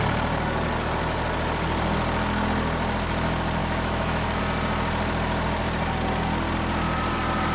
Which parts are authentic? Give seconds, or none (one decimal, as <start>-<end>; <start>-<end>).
0.0-3.6; 4.4-7.5